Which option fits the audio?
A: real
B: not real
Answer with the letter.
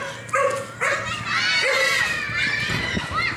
A